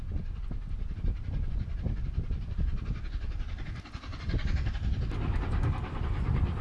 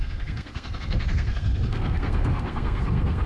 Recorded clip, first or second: first